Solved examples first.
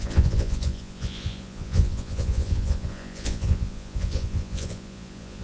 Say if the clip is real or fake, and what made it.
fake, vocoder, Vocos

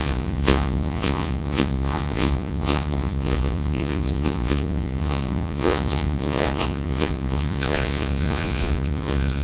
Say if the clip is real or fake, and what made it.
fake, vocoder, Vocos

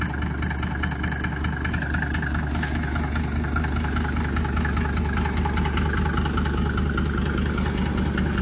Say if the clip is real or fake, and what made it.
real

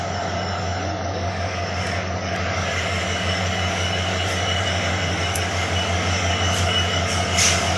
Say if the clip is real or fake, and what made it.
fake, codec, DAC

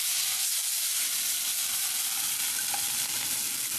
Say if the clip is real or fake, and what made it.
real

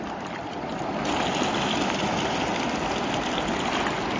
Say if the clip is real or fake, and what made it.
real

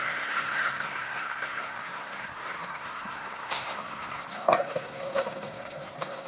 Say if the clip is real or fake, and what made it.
fake, codec, SNAC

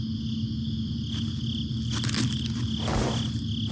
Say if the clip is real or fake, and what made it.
real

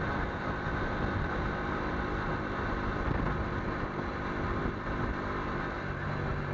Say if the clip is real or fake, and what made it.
real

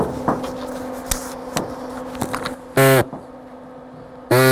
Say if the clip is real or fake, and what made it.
real